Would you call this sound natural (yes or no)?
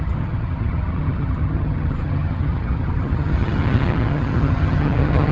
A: no